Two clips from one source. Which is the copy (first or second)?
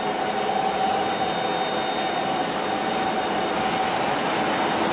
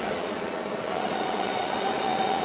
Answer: second